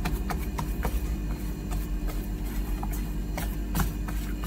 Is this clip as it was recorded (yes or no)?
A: yes